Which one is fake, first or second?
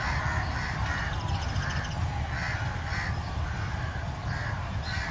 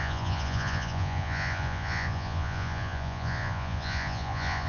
second